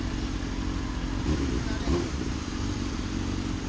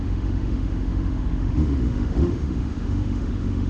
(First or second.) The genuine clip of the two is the first